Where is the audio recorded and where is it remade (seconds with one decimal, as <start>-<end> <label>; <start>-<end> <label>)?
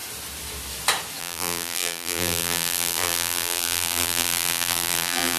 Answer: 0.0-1.2 recorded; 1.2-5.4 remade